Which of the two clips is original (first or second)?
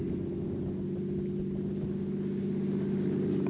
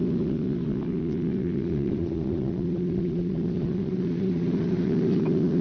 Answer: first